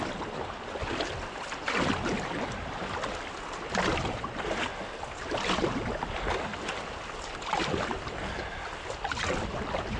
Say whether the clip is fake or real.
real